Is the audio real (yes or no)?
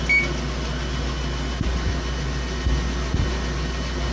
yes